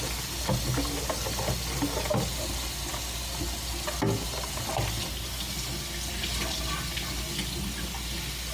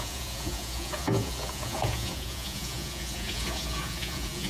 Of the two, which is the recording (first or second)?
first